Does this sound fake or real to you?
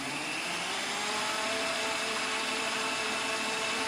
fake